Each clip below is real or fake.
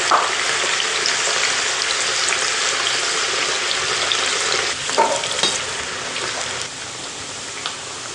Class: real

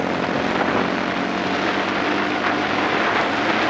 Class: real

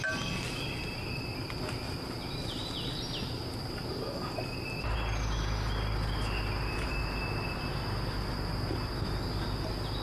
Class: real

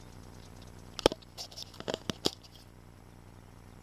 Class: real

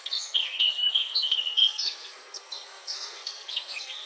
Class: fake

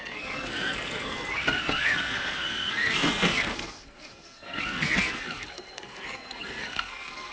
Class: fake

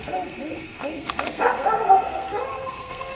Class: fake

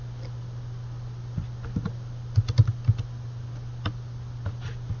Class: real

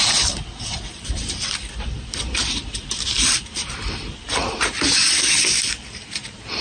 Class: real